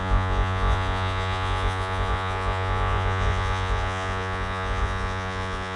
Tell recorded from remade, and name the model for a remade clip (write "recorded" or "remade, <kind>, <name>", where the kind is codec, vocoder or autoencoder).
remade, vocoder, Vocos